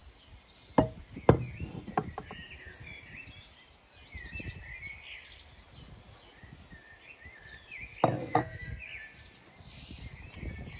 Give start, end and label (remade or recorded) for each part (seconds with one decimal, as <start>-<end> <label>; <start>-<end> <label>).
0.0-8.2 recorded; 8.2-8.8 remade; 8.8-10.8 recorded